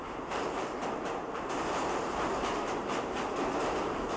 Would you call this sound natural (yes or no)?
no